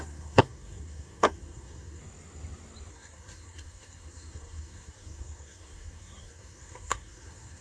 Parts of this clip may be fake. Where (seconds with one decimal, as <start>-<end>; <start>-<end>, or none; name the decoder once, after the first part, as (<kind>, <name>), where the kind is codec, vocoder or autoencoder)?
0.0-2.0 (codec, SNAC); 2.9-7.6

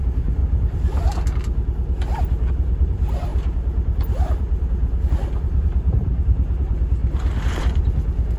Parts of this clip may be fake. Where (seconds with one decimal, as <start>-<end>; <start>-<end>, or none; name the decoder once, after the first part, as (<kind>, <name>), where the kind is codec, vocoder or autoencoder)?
0.0-0.4 (vocoder, BigVGAN v2); 2.5-8.4

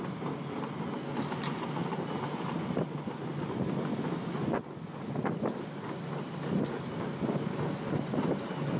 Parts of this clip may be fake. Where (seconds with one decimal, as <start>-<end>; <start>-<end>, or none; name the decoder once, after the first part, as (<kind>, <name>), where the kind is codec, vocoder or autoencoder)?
none

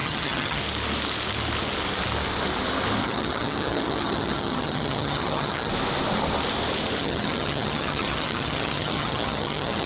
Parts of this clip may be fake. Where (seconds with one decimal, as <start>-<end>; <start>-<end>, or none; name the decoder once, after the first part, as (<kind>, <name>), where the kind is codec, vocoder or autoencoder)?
0.0-0.6 (vocoder, HiFi-GAN); 3.0-5.7; 7.0-9.9

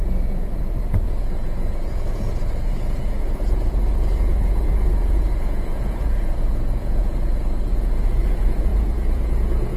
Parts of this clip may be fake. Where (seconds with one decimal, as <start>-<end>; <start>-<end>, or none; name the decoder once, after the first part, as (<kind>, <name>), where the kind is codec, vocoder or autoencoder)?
0.0-9.8 (vocoder, Vocos)

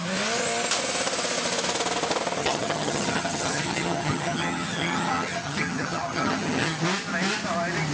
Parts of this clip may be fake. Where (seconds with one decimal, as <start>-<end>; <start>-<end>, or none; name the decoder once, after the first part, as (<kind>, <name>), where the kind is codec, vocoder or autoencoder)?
2.4-6.8 (vocoder, HiFi-GAN)